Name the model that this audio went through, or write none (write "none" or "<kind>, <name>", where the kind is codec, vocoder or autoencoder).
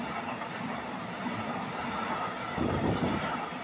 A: none